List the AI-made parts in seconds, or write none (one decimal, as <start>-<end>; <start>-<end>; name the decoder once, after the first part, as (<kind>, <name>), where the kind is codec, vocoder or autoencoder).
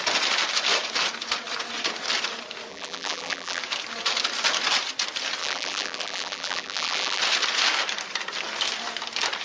2.7-3.6 (vocoder, BigVGAN v2); 5.4-7.2